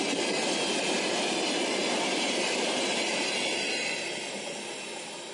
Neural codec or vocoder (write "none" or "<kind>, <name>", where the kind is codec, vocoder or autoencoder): none